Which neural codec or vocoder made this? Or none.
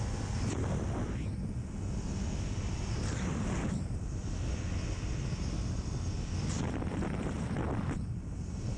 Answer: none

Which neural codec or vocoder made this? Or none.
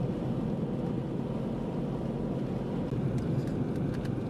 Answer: none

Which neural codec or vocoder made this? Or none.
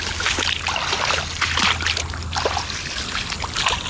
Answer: none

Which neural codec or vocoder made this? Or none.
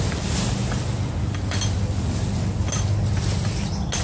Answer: none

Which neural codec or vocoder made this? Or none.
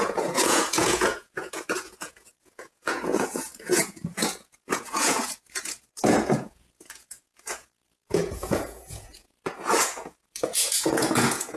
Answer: vocoder, Vocos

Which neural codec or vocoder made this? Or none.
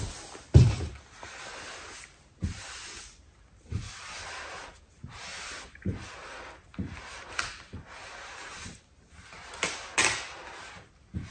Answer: none